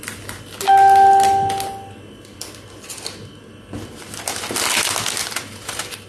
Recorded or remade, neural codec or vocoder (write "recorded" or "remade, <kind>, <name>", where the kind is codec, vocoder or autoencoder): recorded